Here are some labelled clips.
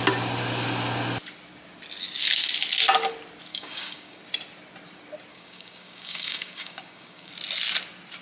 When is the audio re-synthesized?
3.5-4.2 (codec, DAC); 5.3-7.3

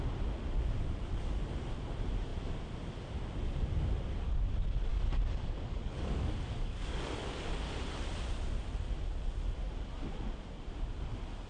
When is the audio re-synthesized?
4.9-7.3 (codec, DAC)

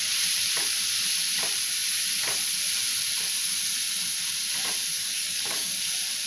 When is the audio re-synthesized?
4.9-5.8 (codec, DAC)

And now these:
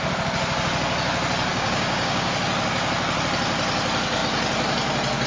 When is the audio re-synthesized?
1.5-2.3 (codec, DAC)

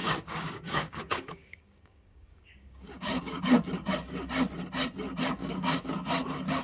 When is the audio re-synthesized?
0.0-3.4 (codec, DAC); 5.4-5.9

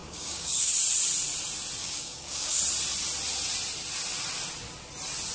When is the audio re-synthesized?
0.0-0.7 (codec, DAC); 1.8-2.6